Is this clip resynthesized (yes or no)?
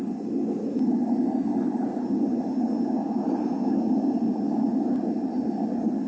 no